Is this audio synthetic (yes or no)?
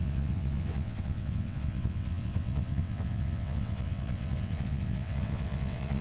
yes